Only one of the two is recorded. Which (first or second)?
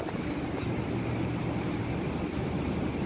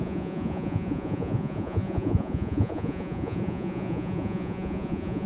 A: first